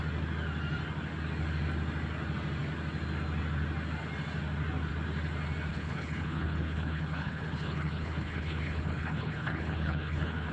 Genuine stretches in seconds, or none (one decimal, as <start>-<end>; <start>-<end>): 0.0-5.7